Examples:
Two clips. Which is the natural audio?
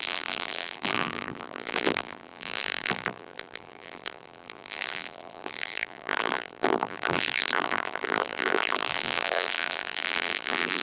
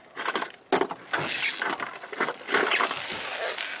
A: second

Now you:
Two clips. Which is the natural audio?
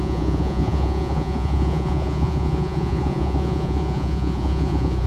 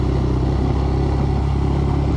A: second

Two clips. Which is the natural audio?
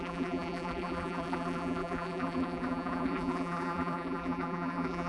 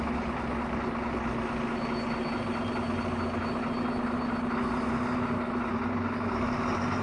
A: second